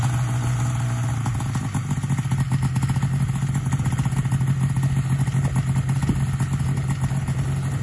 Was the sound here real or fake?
real